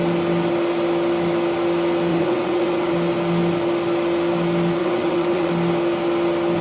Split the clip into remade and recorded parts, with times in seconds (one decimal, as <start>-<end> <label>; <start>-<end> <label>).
0.0-2.1 recorded; 2.1-2.9 remade; 2.9-4.8 recorded; 4.8-5.5 remade; 5.5-6.6 recorded